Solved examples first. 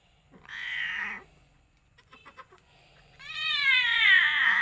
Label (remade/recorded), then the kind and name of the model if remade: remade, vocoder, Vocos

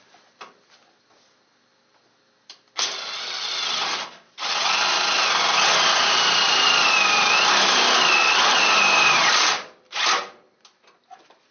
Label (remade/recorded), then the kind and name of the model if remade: recorded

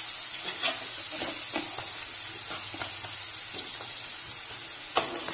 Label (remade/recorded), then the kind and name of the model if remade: recorded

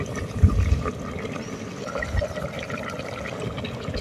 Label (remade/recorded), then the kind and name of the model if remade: recorded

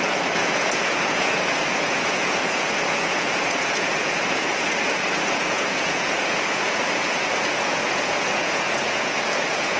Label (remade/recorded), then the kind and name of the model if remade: remade, vocoder, Vocos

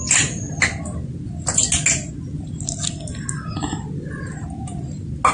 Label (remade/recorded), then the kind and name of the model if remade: recorded